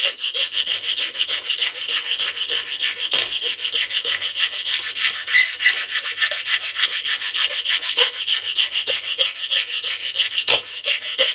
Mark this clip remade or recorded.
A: remade